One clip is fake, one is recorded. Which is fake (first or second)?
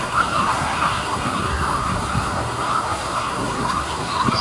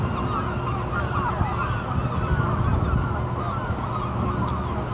first